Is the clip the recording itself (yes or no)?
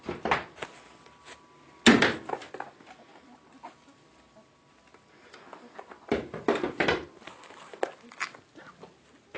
yes